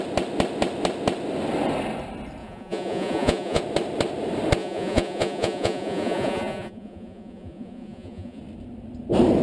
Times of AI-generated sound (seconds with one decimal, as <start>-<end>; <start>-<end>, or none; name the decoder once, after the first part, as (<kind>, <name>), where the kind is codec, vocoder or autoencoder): 2.4-3.6 (vocoder, Vocos); 4.6-8.4